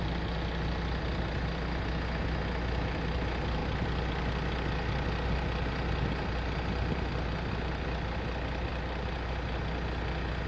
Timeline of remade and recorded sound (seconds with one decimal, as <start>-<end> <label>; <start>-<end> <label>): 0.0-8.7 recorded; 8.7-9.6 remade; 9.6-10.5 recorded